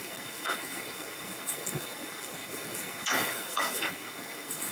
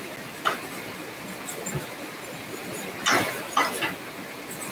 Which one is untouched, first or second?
second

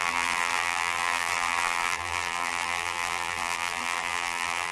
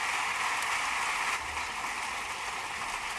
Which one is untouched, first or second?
second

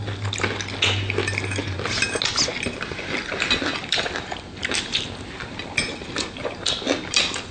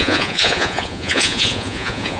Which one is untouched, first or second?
first